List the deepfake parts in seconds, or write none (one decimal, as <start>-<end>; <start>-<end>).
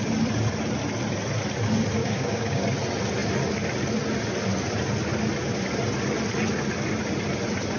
2.0-2.6